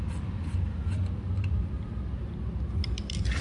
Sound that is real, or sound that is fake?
fake